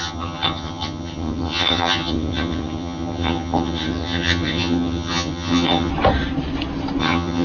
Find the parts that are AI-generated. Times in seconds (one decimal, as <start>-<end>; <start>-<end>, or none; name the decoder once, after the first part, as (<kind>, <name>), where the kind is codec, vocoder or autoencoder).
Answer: 0.0-5.9 (vocoder, HiFi-GAN); 7.0-7.4